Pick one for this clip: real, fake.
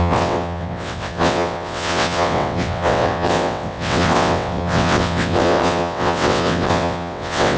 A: fake